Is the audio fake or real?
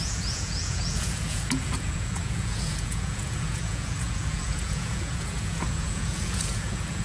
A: fake